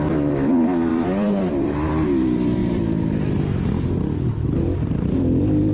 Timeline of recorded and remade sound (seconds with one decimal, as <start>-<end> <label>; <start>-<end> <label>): 0.0-5.7 remade